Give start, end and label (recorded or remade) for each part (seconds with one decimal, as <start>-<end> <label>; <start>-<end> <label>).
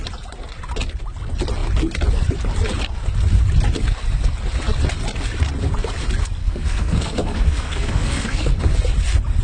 0.0-6.4 recorded; 6.4-8.6 remade; 8.6-9.4 recorded